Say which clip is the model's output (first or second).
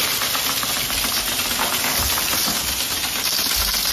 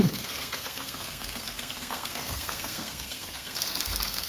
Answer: second